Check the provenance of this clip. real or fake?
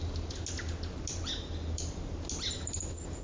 real